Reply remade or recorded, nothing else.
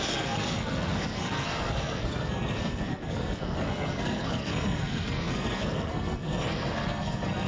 remade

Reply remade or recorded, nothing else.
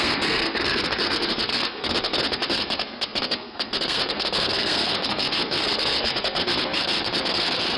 remade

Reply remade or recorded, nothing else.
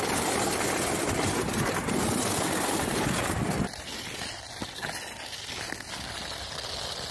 recorded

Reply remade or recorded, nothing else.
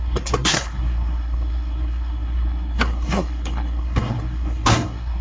remade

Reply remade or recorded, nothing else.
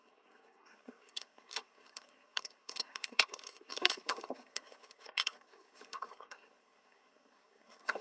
remade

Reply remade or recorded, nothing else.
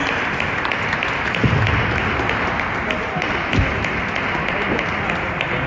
recorded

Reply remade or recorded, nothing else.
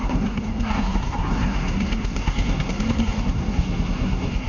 remade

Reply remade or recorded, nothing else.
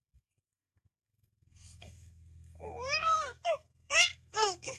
remade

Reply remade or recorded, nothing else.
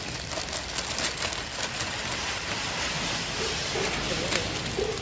recorded